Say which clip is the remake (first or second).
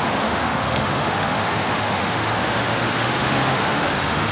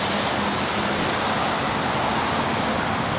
first